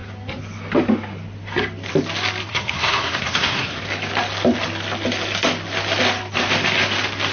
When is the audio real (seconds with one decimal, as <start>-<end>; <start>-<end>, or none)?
0.0-2.5; 3.8-7.3